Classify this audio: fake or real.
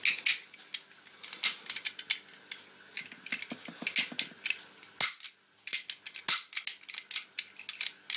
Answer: real